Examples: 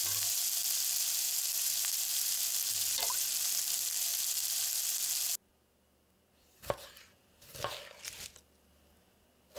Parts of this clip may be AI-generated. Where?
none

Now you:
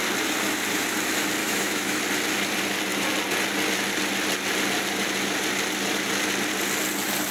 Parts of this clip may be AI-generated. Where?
1.4-2.0 (autoencoder, DAC-VAE)

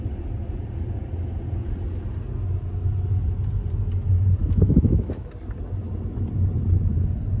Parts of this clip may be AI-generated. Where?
4.4-5.3 (autoencoder, DAC-VAE)

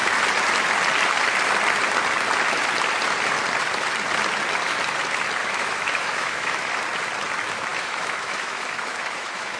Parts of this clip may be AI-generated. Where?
5.4-6.7 (autoencoder, DAC-VAE); 7.7-9.6

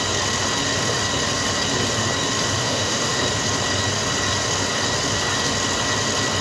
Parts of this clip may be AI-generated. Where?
2.6-3.2 (autoencoder, DAC-VAE)